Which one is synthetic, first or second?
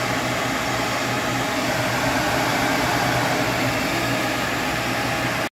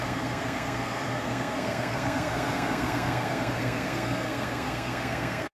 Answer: second